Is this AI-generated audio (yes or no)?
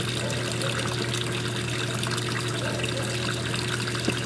no